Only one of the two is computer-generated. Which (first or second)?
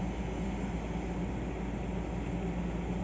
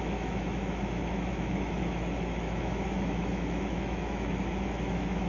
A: second